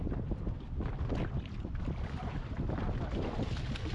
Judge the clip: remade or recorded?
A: remade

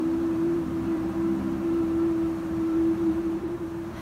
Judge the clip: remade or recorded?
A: remade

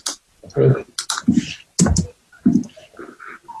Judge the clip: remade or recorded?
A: recorded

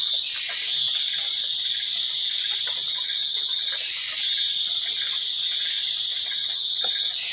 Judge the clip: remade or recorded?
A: recorded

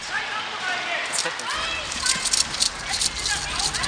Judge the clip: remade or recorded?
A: recorded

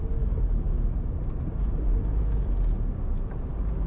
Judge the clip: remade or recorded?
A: recorded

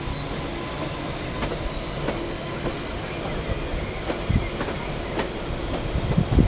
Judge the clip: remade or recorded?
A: recorded